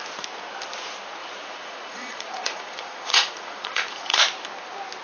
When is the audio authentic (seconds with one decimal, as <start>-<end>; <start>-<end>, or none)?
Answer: 0.0-1.2; 4.2-5.0